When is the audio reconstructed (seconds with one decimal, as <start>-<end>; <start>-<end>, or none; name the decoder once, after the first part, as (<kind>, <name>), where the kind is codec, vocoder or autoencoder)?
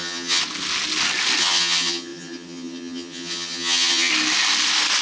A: 0.0-0.4 (vocoder, HiFi-GAN); 1.4-4.1